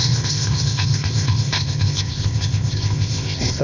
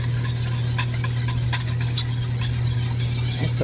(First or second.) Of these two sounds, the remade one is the first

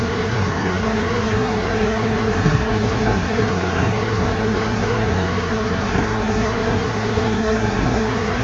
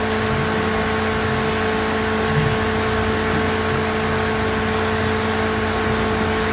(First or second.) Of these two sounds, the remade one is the first